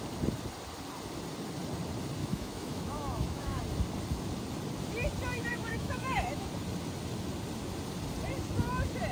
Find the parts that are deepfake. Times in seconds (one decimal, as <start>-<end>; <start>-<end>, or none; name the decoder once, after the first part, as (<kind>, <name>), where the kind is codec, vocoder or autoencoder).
2.2-3.6 (autoencoder, DAC-VAE); 5.5-6.5